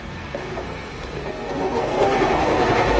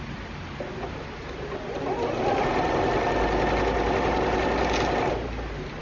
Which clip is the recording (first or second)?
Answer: second